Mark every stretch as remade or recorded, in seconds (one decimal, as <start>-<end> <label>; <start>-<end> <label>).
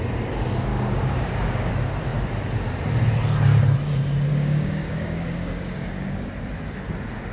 0.0-0.7 recorded; 0.7-1.7 remade; 1.7-4.3 recorded; 4.3-6.3 remade; 6.3-7.3 recorded